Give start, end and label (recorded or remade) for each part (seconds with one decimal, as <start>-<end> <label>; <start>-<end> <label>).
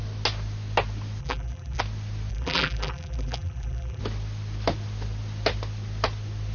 0.0-1.2 recorded; 1.2-1.8 remade; 1.8-2.3 recorded; 2.3-4.0 remade; 4.0-6.5 recorded